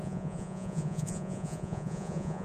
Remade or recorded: remade